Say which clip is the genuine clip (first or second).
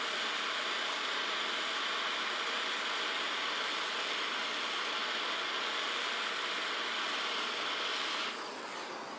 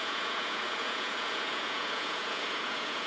first